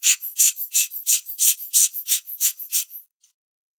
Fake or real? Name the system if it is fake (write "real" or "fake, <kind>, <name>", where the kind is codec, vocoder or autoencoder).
fake, codec, SNAC